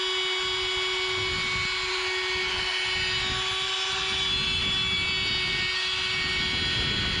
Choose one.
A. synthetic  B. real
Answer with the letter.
B